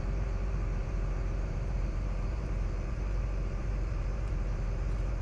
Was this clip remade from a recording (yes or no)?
yes